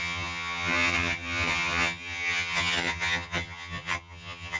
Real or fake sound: fake